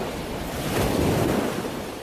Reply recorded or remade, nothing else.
recorded